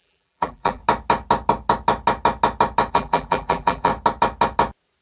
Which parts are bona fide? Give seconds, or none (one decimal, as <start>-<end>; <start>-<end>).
0.8-2.9; 3.9-5.0